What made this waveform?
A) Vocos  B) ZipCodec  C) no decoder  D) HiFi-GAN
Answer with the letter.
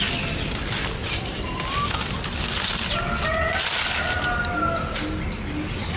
C